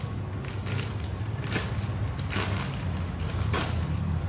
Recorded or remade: remade